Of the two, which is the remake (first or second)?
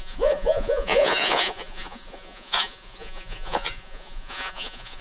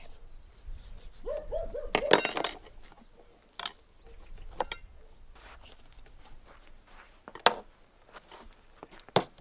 first